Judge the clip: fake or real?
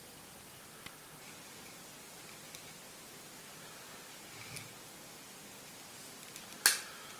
real